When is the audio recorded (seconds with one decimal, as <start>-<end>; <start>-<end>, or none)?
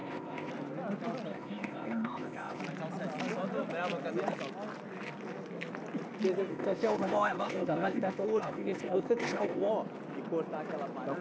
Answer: 0.5-1.3; 2.6-6.5; 9.7-11.2